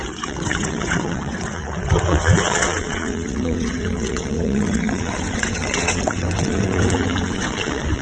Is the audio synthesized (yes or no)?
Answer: yes